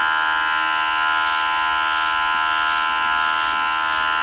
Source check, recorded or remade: recorded